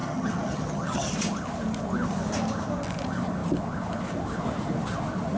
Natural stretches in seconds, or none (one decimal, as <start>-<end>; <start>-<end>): 1.1-5.4